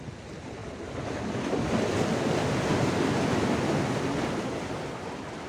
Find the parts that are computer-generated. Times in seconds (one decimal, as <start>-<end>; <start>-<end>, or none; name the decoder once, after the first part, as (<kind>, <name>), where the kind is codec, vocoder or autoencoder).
none